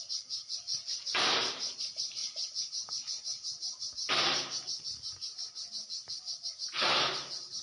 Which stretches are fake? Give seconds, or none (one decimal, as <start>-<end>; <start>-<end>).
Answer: 0.0-2.2; 6.5-7.6